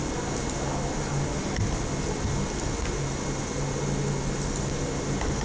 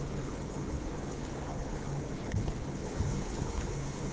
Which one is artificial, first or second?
second